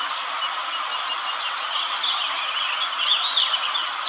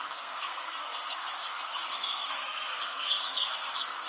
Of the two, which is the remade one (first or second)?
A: second